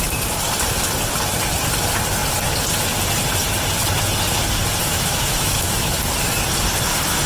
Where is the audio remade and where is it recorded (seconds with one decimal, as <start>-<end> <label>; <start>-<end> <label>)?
0.0-4.9 recorded; 4.9-6.0 remade; 6.0-7.3 recorded